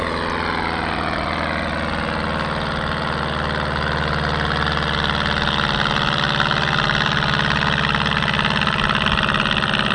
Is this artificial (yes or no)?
no